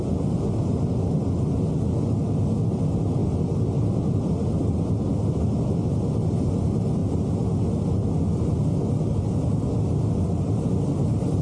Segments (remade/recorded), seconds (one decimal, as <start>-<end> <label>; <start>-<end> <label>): 0.0-11.4 recorded